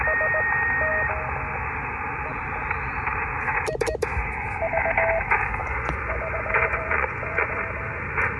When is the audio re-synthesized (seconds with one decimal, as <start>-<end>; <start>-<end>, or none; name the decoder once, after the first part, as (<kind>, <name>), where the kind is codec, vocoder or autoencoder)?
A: 5.6-7.6 (vocoder, Vocos)